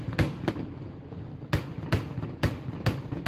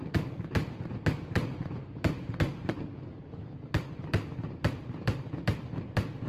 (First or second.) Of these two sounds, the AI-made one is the second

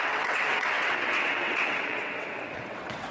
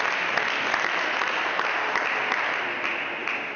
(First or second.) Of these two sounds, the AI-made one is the first